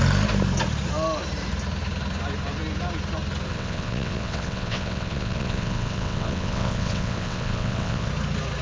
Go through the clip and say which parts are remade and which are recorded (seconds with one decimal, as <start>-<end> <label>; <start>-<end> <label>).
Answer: 0.0-3.5 recorded; 3.5-8.1 remade; 8.1-8.6 recorded